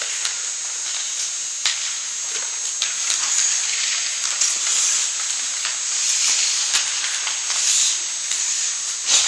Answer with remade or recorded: recorded